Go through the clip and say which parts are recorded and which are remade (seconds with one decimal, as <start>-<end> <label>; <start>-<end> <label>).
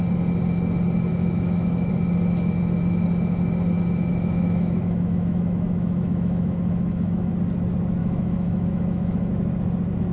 0.0-1.1 recorded; 1.1-1.9 remade; 1.9-4.1 recorded; 4.1-7.3 remade; 7.3-8.0 recorded; 8.0-9.3 remade; 9.3-10.1 recorded